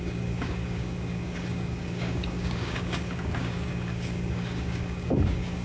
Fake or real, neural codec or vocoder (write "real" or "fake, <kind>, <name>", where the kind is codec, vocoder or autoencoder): fake, codec, DAC